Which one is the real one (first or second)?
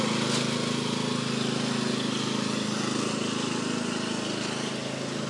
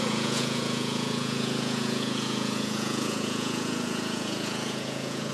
first